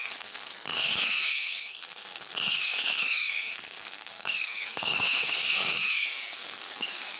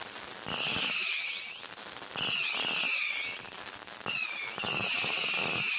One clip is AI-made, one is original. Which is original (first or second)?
second